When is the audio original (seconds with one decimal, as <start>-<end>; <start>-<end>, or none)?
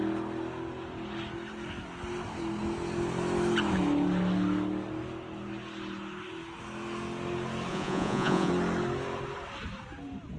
0.0-7.7; 8.5-10.4